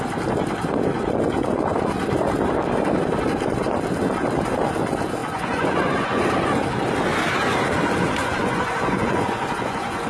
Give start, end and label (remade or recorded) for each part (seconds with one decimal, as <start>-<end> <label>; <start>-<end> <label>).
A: 0.0-5.2 recorded; 5.2-6.3 remade; 6.3-8.2 recorded; 8.2-10.1 remade